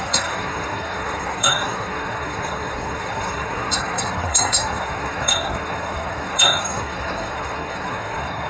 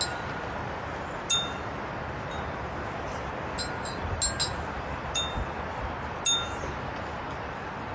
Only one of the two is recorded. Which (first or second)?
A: second